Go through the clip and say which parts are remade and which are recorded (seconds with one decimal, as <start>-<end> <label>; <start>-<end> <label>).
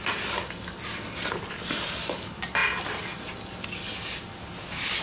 0.0-5.0 recorded